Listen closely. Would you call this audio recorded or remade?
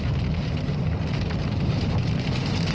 remade